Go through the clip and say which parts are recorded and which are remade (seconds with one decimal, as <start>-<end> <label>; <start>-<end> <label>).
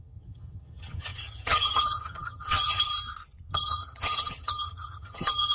0.0-2.9 remade; 2.9-3.5 recorded; 3.5-5.5 remade